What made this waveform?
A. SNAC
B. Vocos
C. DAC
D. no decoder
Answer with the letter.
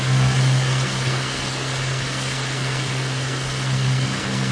A